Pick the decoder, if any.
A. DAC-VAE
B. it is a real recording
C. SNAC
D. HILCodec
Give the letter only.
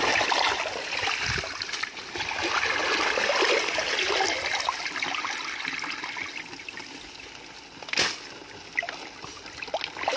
B